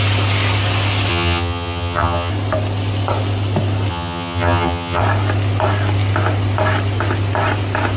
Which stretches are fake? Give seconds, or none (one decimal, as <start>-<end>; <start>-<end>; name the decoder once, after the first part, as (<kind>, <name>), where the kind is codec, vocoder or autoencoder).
1.1-2.3 (vocoder, HiFi-GAN); 3.9-5.0